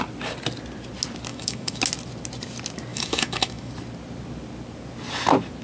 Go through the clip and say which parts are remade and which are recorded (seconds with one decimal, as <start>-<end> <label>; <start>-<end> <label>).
0.0-1.3 recorded; 1.3-1.8 remade; 1.8-2.9 recorded; 2.9-3.7 remade; 3.7-5.6 recorded